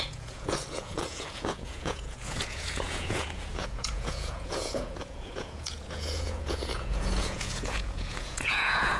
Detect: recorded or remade remade